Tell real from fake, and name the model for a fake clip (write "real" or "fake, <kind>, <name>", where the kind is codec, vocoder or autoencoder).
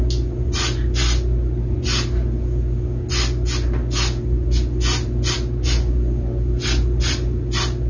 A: real